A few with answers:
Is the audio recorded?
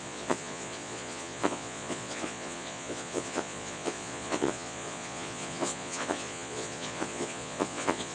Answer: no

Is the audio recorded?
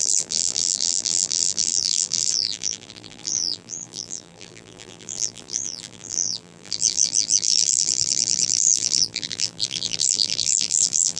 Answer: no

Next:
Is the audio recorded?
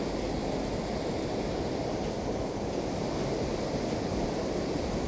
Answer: yes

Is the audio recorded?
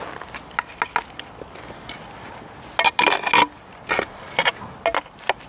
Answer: yes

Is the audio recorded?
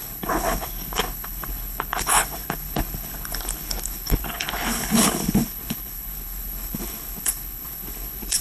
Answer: no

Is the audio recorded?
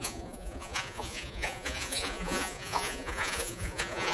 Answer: no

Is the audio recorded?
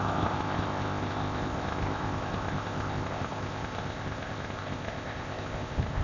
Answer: no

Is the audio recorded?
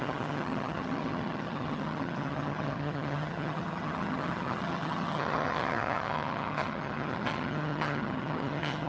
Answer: no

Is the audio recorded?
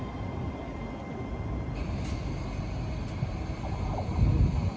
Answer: yes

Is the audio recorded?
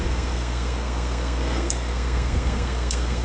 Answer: no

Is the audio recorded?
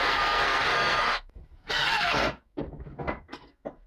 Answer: no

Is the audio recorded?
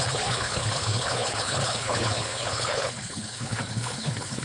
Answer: no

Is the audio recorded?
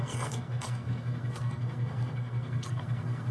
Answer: no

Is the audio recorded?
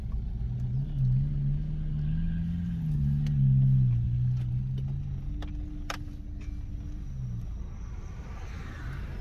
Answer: yes